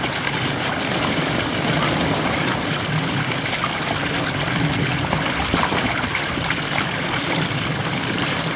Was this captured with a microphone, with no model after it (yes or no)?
no